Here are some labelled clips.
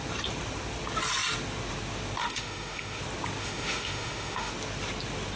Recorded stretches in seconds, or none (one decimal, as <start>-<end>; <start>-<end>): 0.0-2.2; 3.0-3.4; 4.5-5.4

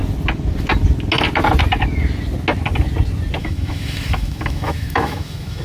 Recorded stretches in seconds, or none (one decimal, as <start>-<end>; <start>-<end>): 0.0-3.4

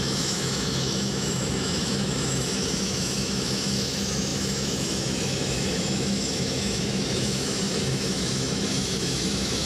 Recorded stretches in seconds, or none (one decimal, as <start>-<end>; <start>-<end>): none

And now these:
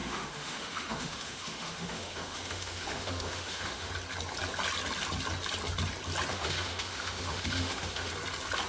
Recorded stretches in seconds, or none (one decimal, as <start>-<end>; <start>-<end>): 3.9-6.3; 8.1-8.7

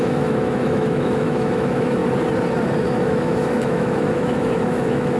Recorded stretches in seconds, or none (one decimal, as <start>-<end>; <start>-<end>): 2.0-2.8

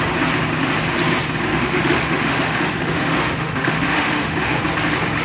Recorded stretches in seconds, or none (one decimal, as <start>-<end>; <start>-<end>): 0.0-1.5; 4.6-5.2